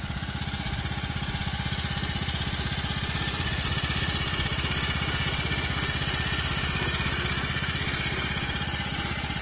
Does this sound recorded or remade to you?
recorded